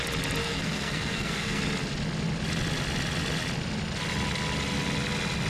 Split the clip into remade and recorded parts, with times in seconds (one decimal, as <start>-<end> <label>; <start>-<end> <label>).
0.0-0.4 recorded; 0.4-1.6 remade; 1.6-5.5 recorded